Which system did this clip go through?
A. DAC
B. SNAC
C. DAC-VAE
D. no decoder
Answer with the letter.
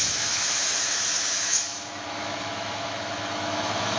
C